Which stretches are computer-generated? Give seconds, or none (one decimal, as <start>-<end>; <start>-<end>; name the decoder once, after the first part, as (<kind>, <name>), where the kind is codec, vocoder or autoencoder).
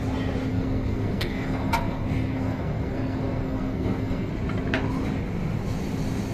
0.5-4.3 (codec, SNAC)